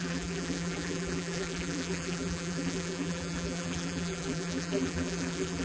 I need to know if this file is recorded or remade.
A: remade